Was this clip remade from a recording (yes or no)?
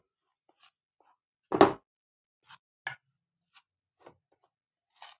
no